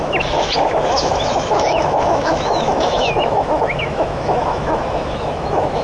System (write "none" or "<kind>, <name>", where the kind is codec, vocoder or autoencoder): autoencoder, DAC-VAE